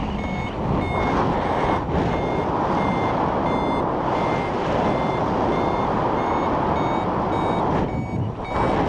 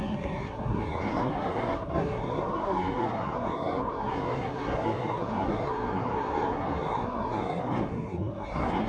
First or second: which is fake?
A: second